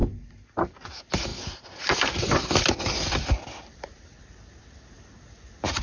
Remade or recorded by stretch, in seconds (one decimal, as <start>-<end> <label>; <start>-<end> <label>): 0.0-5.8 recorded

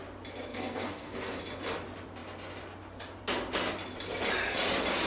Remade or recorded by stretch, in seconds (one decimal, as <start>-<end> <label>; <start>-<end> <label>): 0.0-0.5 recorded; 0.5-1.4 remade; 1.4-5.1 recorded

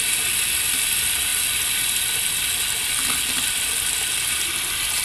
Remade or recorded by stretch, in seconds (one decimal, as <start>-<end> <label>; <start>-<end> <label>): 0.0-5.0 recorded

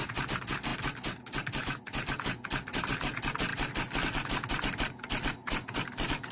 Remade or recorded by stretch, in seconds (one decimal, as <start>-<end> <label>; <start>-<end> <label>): 0.0-6.3 recorded

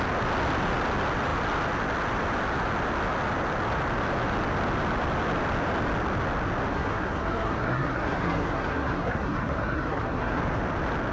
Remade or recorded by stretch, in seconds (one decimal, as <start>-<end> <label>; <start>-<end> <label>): 0.0-6.7 recorded; 6.7-10.4 remade; 10.4-11.1 recorded

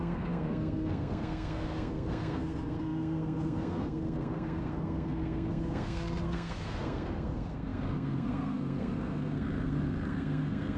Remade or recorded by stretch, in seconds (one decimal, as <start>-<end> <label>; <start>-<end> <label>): 0.0-10.8 remade